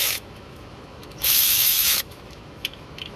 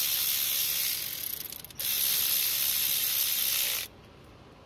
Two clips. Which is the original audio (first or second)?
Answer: second